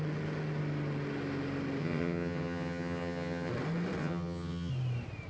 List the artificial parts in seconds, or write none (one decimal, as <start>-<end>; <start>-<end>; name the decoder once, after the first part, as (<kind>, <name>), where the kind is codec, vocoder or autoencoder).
1.8-3.5 (vocoder, HiFi-GAN); 4.0-4.7